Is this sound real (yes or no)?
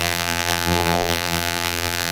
no